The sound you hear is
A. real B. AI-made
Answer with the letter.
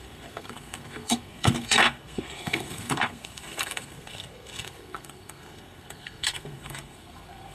B